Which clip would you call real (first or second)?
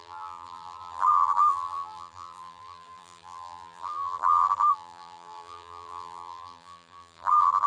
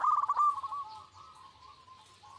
second